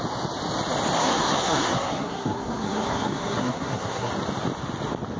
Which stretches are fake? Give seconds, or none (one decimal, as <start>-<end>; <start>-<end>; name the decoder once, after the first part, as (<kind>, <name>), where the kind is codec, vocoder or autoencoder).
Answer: 1.0-4.1 (codec, SNAC)